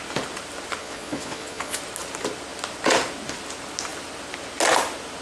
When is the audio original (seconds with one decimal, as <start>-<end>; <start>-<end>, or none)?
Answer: 0.0-0.8; 1.8-5.2